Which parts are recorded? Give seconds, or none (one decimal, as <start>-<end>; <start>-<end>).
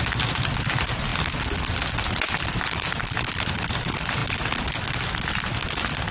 0.0-6.1